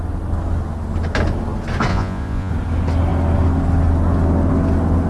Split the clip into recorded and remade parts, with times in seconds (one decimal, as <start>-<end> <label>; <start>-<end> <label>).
0.0-1.9 recorded; 1.9-2.5 remade; 2.5-5.1 recorded